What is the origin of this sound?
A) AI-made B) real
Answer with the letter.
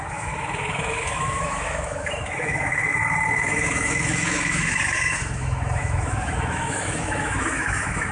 A